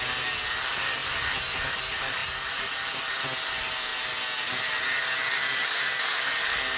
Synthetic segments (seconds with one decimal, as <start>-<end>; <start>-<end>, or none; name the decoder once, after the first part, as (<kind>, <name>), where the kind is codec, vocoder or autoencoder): none

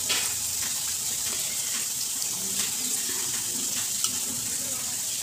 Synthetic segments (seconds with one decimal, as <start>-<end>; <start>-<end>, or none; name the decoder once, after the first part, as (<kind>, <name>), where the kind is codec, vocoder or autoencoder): 0.7-3.8 (vocoder, BigVGAN v2)

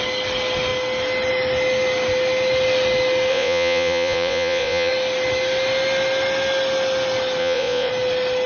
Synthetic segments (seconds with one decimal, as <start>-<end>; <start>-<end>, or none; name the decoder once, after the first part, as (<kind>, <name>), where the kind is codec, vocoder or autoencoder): 3.3-4.9 (vocoder, Vocos); 7.4-7.9

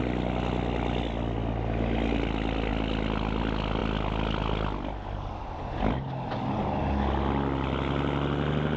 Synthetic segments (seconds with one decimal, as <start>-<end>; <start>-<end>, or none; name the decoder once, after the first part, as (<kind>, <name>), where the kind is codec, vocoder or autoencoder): none

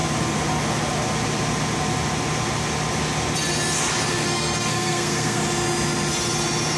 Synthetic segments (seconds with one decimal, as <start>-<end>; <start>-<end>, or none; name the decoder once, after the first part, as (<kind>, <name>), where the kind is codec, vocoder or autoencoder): 4.1-5.4 (codec, SNAC)

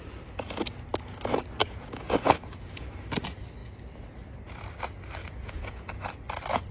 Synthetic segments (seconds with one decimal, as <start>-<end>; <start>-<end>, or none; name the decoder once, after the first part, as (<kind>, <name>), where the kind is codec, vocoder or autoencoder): 1.6-2.9 (vocoder, Vocos); 5.2-5.9